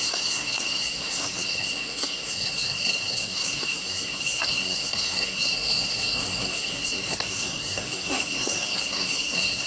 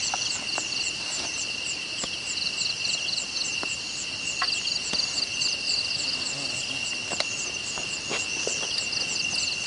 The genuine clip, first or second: second